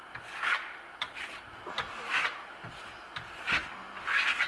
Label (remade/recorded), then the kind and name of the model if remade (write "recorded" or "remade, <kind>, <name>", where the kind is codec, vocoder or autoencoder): recorded